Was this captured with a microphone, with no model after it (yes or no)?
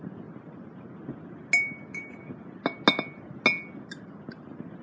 yes